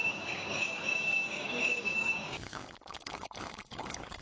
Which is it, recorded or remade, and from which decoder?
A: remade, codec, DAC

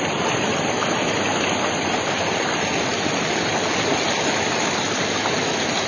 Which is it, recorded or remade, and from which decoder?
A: remade, vocoder, BigVGAN v2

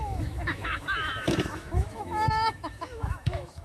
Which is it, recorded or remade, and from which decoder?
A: remade, autoencoder, DAC-VAE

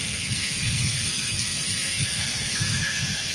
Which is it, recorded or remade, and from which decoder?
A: remade, codec, SNAC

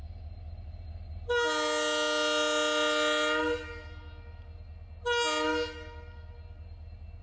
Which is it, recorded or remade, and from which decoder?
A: recorded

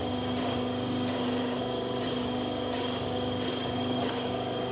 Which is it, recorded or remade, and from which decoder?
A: remade, codec, DAC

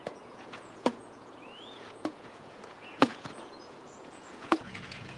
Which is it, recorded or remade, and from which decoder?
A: remade, vocoder, Vocos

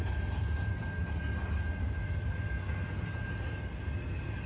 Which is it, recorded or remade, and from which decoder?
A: recorded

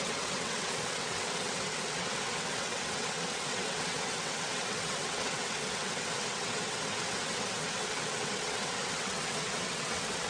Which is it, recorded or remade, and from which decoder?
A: remade, vocoder, WaveNeXt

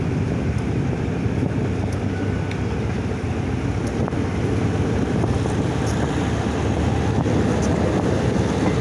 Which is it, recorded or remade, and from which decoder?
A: recorded